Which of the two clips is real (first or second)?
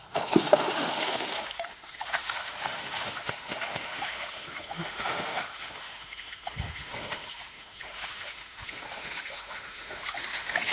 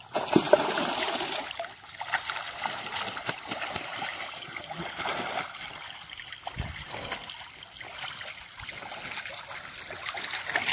second